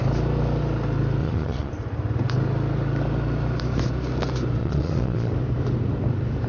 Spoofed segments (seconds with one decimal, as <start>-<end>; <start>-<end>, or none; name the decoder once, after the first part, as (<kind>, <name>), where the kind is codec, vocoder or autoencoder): 1.2-1.7 (vocoder, Vocos); 4.6-5.3